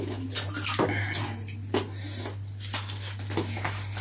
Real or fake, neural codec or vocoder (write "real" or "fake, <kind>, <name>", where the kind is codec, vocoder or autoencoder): real